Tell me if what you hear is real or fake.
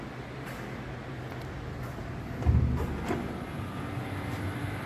real